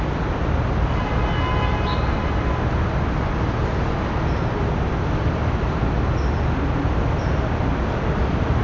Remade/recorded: recorded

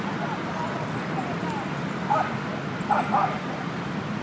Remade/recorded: recorded